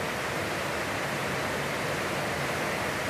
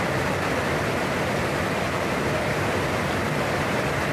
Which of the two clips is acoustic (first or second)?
first